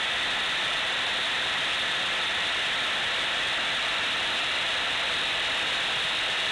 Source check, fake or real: fake